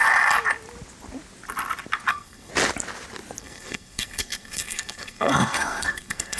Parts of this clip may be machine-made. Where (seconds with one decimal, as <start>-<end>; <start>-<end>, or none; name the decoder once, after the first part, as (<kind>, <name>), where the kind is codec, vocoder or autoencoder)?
2.1-2.5 (codec, SNAC); 3.4-6.4